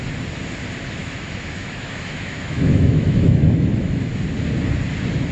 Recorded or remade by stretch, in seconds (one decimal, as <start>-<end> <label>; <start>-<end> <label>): 0.0-1.0 recorded; 1.0-4.1 remade; 4.1-5.3 recorded